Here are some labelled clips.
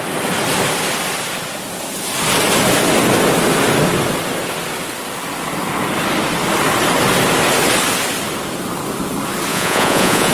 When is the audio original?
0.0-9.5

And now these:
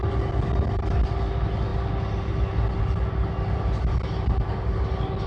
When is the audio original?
0.0-5.3

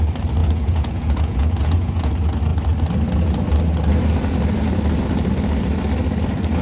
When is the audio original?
0.0-0.4; 2.1-6.6

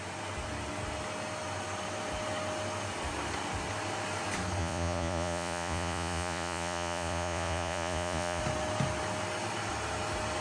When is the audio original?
0.0-4.6; 8.4-10.4

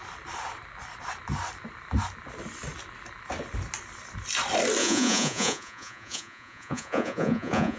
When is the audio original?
0.0-4.8

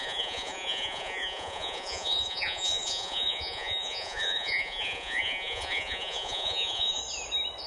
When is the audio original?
7.0-7.7

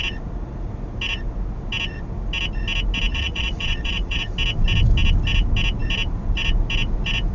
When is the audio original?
0.0-3.1; 4.2-7.3

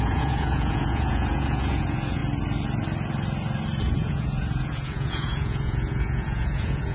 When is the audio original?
2.2-3.8